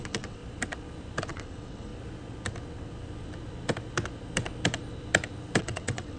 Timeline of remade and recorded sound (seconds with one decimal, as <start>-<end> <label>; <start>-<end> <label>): 0.0-0.4 remade; 0.4-1.2 recorded; 1.2-1.9 remade; 1.9-5.6 recorded; 5.6-6.2 remade